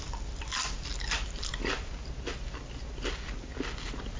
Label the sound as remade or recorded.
recorded